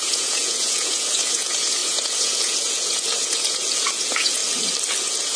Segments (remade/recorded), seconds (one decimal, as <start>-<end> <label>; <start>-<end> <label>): 0.0-4.4 remade; 4.4-5.0 recorded; 5.0-5.4 remade